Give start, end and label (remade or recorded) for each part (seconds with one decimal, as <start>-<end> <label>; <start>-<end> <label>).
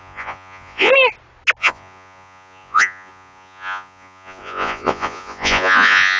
0.0-0.9 remade; 0.9-1.6 recorded; 1.6-6.2 remade